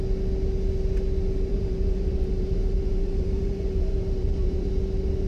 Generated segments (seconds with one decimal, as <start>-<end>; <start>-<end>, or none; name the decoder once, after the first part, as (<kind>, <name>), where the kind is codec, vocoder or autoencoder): 1.5-4.7 (vocoder, BigVGAN v2)